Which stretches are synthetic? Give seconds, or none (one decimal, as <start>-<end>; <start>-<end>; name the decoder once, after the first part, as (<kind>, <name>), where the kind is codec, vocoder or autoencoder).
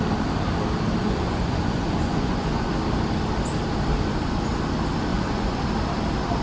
1.0-2.7 (vocoder, Vocos); 5.1-5.6